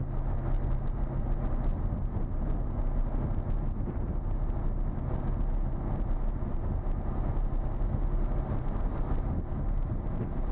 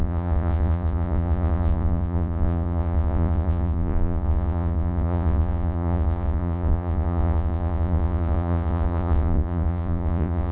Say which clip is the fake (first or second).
second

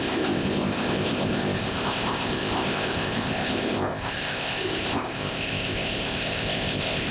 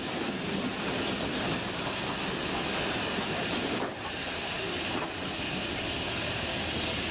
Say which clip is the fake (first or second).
first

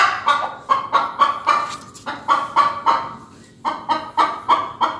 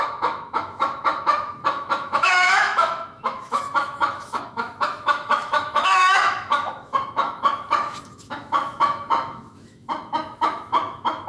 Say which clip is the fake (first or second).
second